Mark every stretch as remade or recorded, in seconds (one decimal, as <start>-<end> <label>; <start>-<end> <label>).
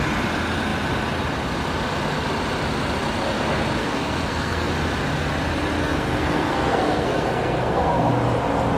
0.0-3.8 recorded; 3.8-4.7 remade; 4.7-5.8 recorded; 5.8-8.1 remade; 8.1-8.8 recorded